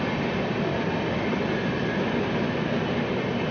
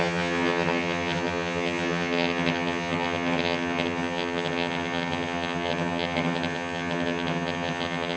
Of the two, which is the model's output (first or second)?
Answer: second